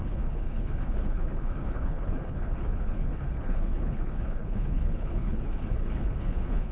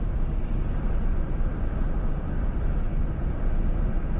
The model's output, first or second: first